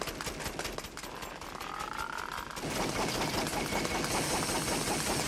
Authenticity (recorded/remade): recorded